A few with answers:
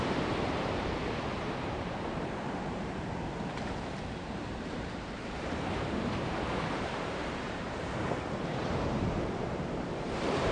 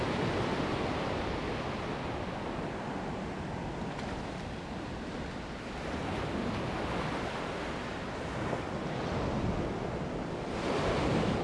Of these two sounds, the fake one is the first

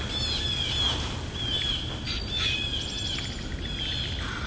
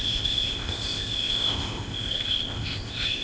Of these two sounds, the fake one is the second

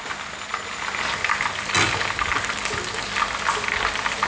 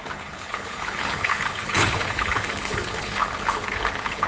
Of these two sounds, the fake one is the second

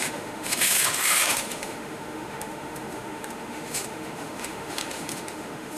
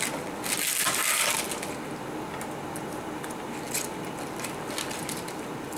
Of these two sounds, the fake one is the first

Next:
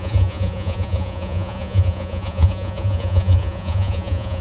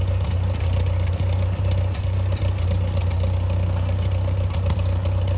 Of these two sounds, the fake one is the first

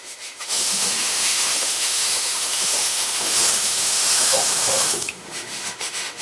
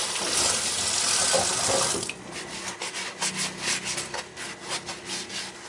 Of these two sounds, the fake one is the first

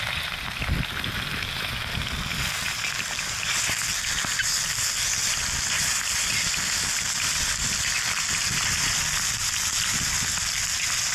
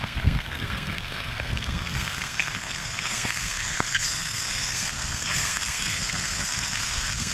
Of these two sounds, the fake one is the second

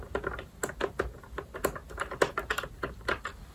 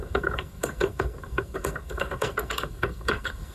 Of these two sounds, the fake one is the second